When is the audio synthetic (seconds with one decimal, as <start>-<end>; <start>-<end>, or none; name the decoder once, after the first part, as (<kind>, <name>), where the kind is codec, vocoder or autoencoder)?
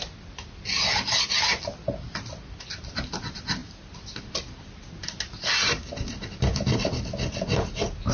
none